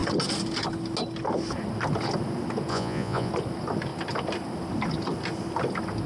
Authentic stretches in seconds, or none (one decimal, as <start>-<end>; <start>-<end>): 0.0-2.7; 3.3-6.1